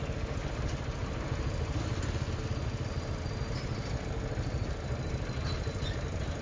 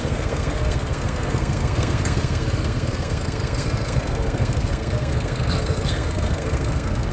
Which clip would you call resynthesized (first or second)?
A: second